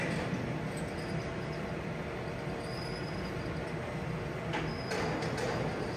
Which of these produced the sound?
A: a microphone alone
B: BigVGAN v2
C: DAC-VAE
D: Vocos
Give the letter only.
A